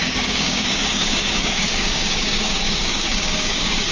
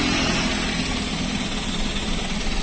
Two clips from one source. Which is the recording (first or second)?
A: second